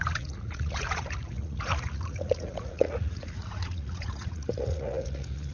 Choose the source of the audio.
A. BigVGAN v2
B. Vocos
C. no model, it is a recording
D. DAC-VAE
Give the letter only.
B